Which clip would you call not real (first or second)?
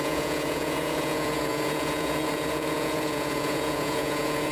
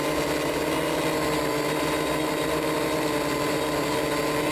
first